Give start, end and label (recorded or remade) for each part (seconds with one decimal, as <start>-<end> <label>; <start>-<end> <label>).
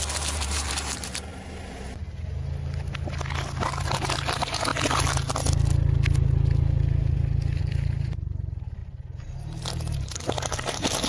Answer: 0.0-1.3 remade; 1.3-3.8 recorded; 3.8-4.7 remade; 4.7-7.6 recorded; 7.6-8.8 remade; 8.8-9.4 recorded; 9.4-11.1 remade